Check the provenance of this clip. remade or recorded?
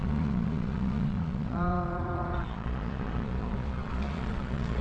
remade